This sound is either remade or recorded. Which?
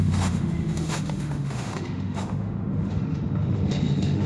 remade